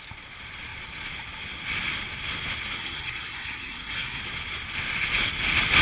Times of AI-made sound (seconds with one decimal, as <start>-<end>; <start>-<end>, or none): 2.8-4.2